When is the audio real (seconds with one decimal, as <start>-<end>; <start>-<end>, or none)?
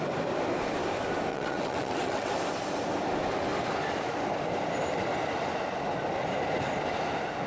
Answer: 0.0-1.3; 2.3-7.5